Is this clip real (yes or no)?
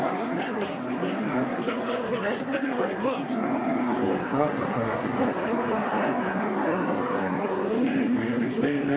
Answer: no